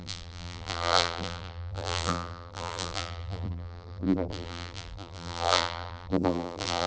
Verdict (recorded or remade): remade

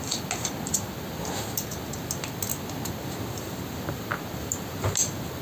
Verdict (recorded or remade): recorded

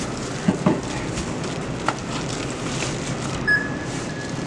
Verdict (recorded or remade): remade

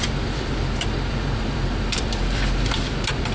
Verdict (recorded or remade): remade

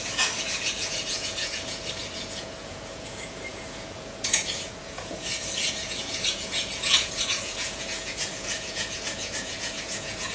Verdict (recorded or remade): remade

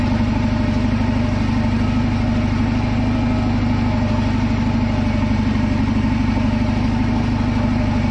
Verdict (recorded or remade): recorded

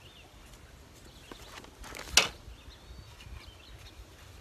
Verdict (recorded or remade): recorded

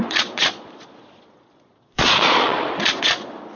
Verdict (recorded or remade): remade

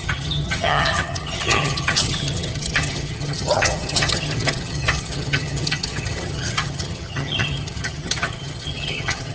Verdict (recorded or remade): remade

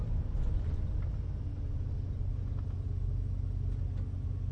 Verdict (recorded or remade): recorded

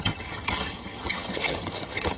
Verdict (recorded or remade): remade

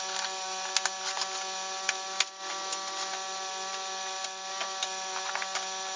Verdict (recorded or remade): recorded